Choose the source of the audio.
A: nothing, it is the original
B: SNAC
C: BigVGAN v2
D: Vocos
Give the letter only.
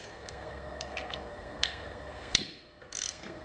B